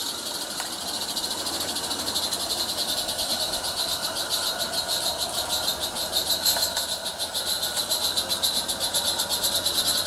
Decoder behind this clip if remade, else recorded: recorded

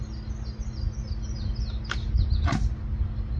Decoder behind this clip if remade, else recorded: recorded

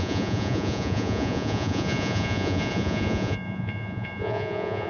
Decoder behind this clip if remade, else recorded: remade, vocoder, Vocos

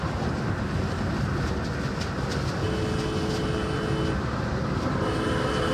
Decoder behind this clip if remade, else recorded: recorded